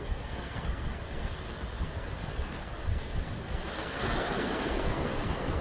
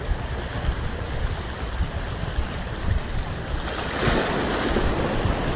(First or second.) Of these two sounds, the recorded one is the second